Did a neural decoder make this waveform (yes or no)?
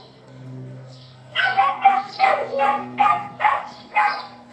yes